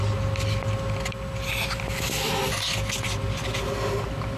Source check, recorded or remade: recorded